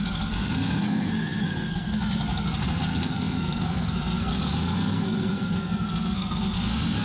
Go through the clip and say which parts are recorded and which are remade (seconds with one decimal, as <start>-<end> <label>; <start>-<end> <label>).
0.0-7.0 remade